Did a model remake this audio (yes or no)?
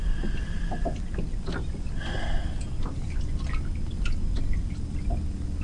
no